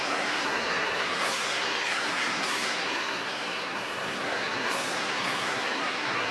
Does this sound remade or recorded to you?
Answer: remade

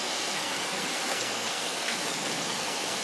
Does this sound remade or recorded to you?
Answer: remade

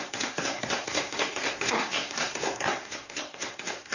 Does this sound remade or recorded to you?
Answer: remade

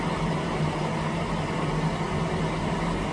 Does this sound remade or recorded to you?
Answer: recorded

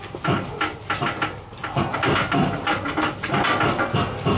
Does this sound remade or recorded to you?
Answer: recorded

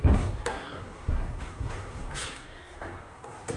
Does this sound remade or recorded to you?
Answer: remade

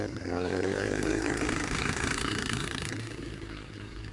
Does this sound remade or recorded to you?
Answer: remade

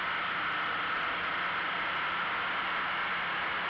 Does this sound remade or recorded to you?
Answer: recorded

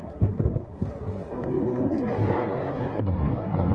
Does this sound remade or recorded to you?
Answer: remade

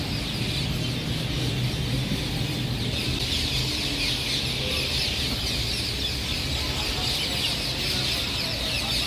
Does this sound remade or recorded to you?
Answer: recorded